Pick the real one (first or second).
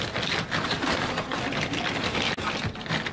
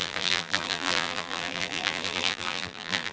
first